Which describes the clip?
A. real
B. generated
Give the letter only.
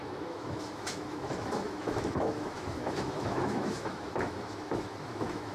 B